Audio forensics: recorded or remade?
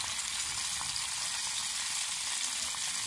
recorded